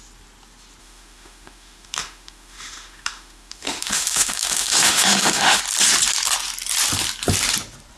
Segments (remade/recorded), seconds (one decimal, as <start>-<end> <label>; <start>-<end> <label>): 0.0-0.8 recorded; 0.8-5.6 remade; 5.6-8.0 recorded